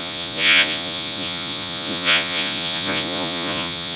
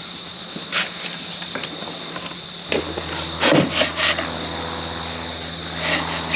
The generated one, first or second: first